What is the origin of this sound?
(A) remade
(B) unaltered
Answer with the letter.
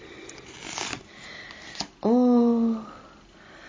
B